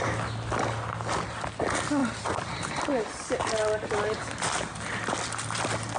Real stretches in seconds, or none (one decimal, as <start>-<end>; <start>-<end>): 0.0-6.0